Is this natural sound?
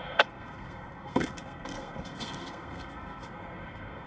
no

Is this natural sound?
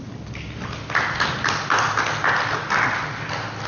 yes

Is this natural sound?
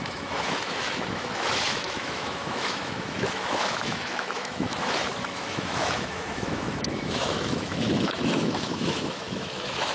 no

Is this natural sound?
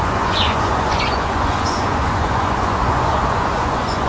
no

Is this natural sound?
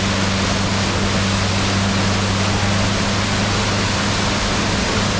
yes